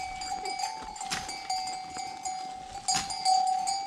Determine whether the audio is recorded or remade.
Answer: recorded